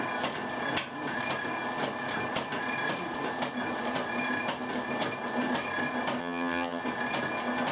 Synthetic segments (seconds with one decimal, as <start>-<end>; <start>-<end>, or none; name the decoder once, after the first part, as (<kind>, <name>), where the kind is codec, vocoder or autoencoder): 6.2-6.8 (vocoder, HiFi-GAN)